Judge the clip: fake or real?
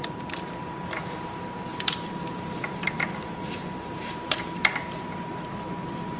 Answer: fake